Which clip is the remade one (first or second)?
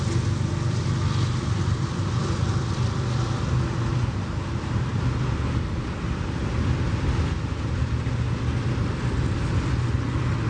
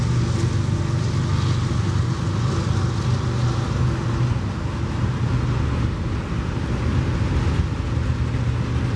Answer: first